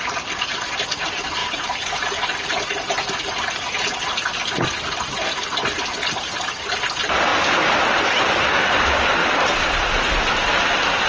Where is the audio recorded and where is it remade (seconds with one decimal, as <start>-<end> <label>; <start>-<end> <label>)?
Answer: 0.0-1.4 recorded; 1.4-2.1 remade; 2.1-7.3 recorded; 7.3-8.6 remade; 8.6-9.2 recorded; 9.2-9.9 remade; 9.9-11.1 recorded